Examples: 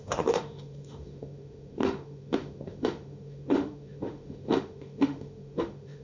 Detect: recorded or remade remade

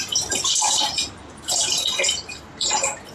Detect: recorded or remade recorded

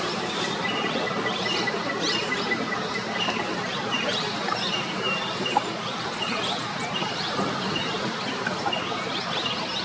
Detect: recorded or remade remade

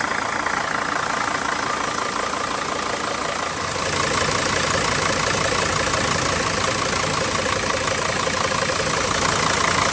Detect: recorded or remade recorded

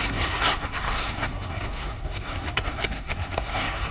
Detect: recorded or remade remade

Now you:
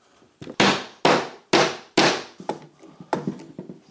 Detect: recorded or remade recorded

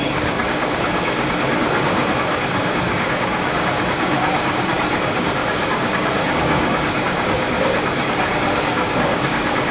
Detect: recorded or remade remade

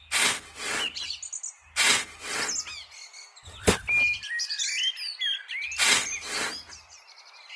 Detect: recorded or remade recorded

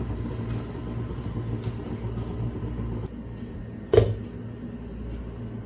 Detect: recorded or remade recorded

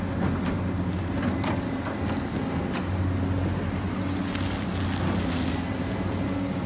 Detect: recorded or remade recorded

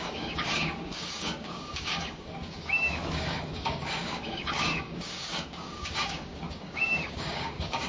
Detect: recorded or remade remade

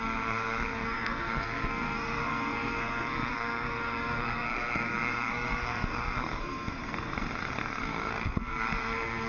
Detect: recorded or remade remade